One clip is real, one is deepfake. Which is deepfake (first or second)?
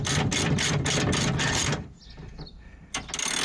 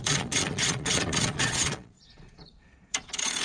second